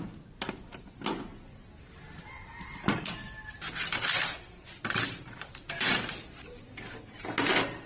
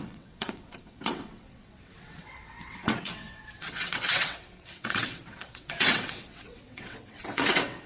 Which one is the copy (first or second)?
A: second